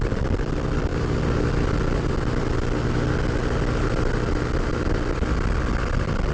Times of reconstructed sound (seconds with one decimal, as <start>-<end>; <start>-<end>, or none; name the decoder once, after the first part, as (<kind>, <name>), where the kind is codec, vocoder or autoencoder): none